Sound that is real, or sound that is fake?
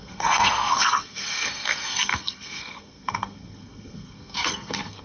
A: fake